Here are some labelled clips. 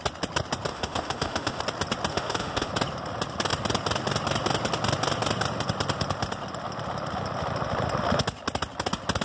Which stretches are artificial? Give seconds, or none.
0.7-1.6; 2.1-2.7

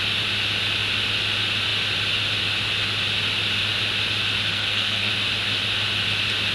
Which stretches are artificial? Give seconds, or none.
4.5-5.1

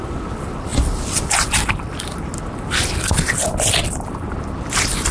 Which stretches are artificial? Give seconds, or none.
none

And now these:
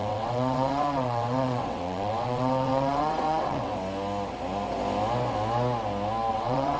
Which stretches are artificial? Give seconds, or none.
0.0-3.7; 6.3-6.8

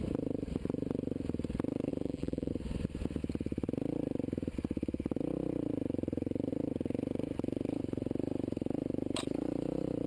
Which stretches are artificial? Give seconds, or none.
1.9-2.5

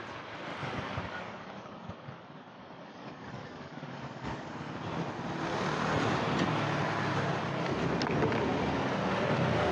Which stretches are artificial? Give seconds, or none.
0.6-4.7

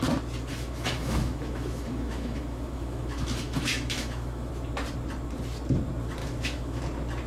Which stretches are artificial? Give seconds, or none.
0.5-4.5; 6.2-6.8

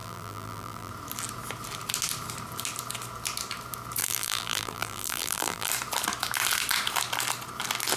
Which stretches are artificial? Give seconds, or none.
0.0-0.9; 4.0-5.7